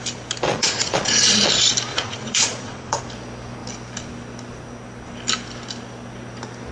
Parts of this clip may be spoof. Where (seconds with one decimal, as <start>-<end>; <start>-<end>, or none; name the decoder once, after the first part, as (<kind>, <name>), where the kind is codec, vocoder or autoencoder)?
0.5-1.5 (vocoder, Vocos); 1.9-3.0